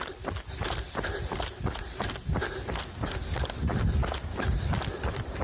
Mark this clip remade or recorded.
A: recorded